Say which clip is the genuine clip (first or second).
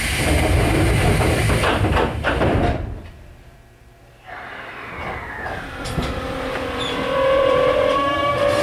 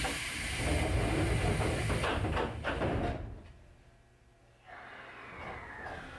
second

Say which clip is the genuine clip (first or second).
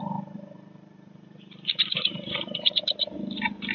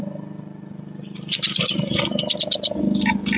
second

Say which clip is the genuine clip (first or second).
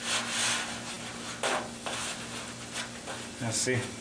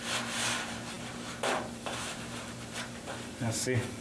first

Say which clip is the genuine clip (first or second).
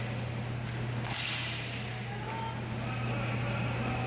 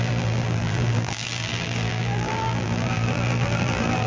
first